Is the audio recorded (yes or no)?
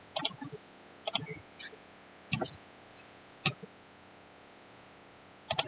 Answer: no